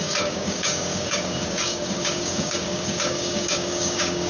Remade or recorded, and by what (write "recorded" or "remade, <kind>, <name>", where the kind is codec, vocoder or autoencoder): remade, codec, DAC